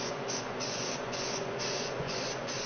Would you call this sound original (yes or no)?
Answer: no